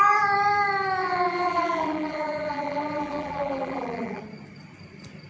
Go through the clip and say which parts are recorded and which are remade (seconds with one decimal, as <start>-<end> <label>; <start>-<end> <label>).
0.0-1.0 recorded; 1.0-4.2 remade; 4.2-5.3 recorded